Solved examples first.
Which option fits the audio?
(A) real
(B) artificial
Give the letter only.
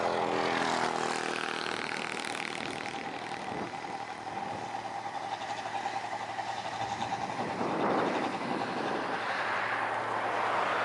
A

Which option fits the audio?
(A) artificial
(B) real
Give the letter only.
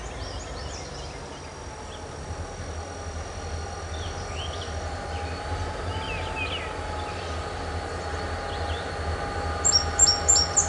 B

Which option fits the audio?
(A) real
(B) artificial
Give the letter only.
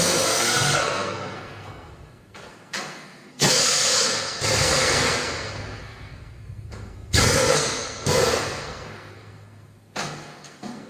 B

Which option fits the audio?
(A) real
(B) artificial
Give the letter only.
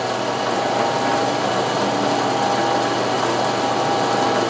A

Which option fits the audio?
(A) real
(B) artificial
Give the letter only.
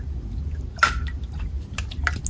A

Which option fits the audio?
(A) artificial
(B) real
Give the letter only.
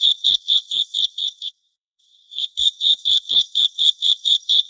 A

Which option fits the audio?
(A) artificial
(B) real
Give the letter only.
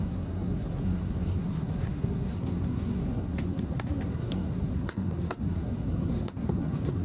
A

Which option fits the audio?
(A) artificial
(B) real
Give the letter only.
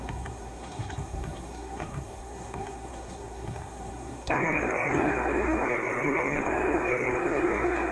A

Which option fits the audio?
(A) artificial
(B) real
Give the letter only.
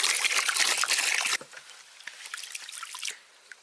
B